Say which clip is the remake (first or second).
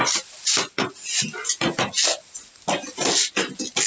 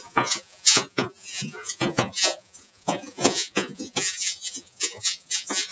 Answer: second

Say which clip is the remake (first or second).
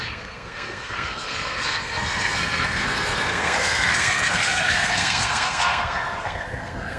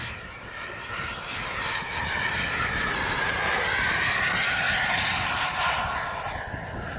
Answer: first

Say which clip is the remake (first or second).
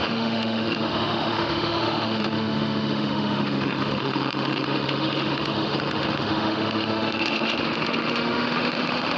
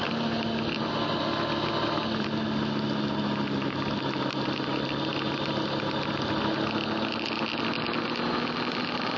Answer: first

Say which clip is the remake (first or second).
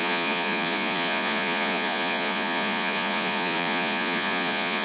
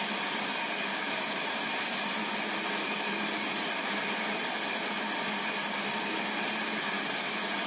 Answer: first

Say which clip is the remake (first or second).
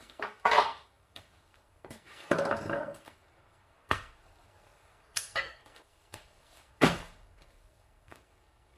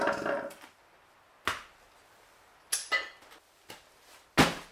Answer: first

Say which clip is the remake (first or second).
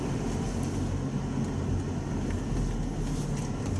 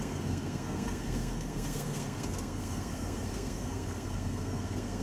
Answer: second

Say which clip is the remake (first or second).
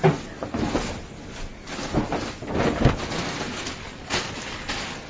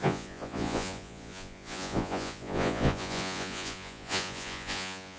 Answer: second